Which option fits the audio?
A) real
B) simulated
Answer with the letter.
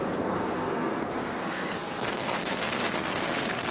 B